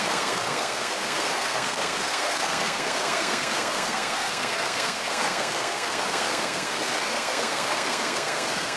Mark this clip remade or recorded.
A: remade